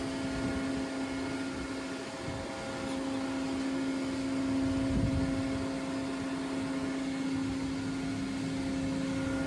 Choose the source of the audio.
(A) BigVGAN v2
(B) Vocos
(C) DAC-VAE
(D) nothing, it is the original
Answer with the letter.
D